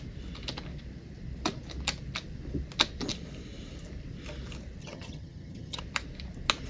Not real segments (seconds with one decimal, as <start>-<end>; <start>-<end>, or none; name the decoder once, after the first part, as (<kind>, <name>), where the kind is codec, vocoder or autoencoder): 4.8-5.8 (vocoder, HiFi-GAN)